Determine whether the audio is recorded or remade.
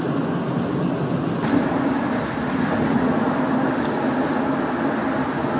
recorded